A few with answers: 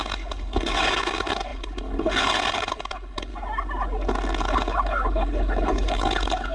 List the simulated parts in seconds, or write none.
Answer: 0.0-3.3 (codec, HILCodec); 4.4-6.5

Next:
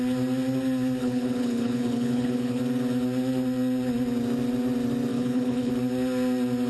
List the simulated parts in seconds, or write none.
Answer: 1.0-2.6 (codec, HILCodec); 5.1-5.7